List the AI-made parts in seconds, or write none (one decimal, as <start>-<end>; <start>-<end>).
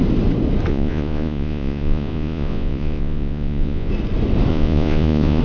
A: 0.7-3.9; 4.5-5.4